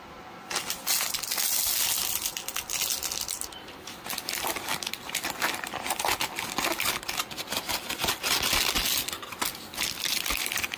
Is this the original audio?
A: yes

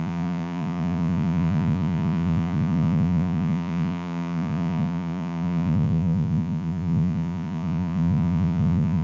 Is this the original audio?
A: no